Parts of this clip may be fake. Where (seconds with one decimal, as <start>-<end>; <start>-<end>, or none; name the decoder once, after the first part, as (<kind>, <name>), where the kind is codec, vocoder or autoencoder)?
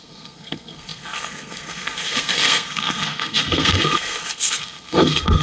0.0-5.4 (codec, SNAC)